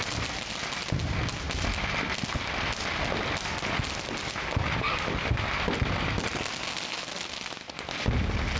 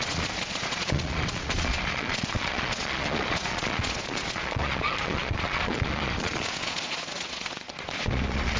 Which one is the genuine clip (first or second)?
first